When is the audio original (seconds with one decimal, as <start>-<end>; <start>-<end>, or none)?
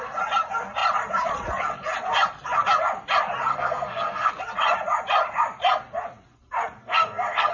0.0-3.5; 4.3-6.8